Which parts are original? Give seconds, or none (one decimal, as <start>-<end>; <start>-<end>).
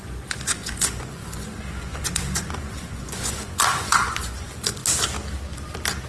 4.8-6.1